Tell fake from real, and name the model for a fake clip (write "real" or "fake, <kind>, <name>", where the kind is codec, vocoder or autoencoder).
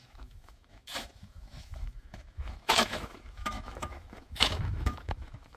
fake, autoencoder, DAC-VAE